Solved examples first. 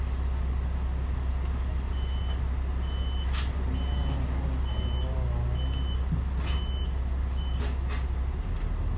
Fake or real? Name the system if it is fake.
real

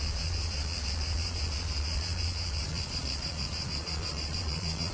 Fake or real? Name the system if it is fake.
fake, vocoder, Vocos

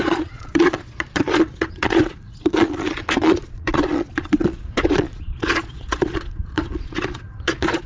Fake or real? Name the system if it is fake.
fake, vocoder, Vocos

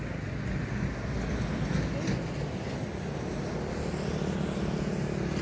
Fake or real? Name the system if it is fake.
real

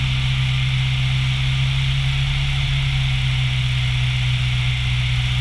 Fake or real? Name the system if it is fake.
real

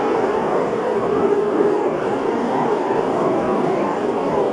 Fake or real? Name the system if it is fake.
fake, codec, DAC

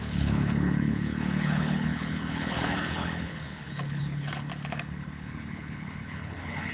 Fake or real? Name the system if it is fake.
fake, codec, HILCodec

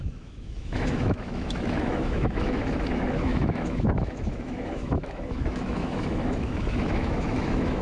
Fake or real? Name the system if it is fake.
fake, autoencoder, DAC-VAE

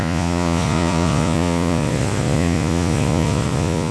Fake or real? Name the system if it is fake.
fake, vocoder, Vocos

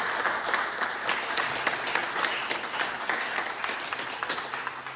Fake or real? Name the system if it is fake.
real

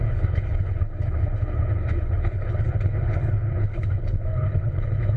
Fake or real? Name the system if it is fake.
fake, codec, HILCodec